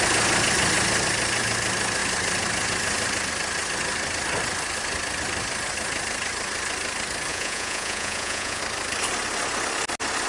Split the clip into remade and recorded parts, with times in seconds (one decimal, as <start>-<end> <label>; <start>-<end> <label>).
0.0-7.3 recorded; 7.3-8.6 remade; 8.6-10.3 recorded